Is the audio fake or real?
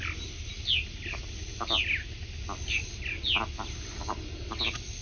real